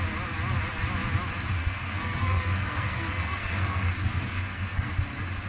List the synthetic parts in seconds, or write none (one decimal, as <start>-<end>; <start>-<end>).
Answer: 1.6-4.9